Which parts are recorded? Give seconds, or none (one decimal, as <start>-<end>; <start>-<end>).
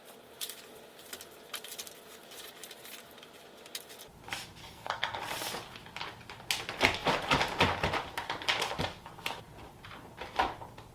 0.0-4.6; 5.2-10.9